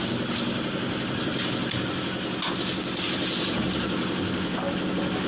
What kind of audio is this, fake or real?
real